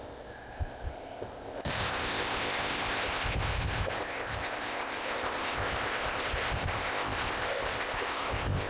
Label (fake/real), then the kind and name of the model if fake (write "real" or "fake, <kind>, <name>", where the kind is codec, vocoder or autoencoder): fake, codec, ZipCodec